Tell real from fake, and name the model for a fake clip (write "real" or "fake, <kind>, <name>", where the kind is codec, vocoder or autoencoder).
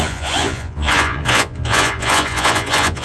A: fake, vocoder, Vocos